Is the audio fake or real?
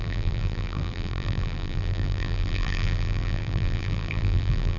fake